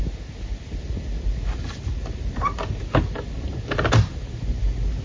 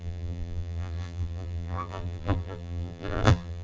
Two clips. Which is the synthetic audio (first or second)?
second